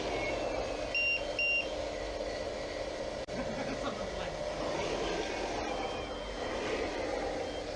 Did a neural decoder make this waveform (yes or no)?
no